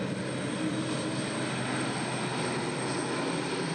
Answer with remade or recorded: recorded